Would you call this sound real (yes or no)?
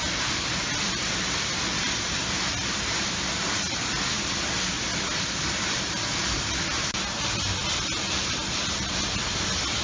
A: yes